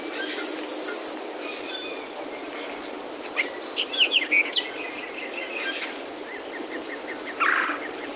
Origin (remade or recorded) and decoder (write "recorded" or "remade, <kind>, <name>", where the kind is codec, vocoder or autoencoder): recorded